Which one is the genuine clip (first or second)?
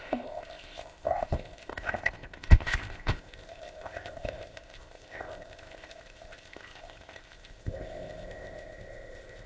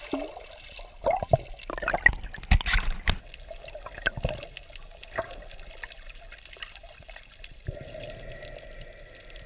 second